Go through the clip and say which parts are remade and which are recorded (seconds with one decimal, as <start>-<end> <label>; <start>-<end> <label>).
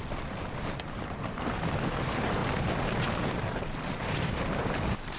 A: 0.0-2.4 remade; 2.4-3.4 recorded; 3.4-5.2 remade